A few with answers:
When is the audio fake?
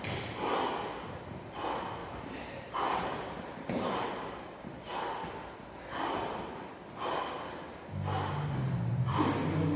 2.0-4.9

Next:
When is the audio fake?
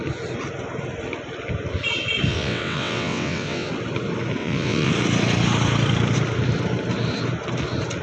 2.3-3.7; 4.4-4.9